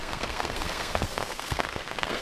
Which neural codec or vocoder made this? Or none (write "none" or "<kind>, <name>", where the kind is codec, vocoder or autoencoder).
codec, SNAC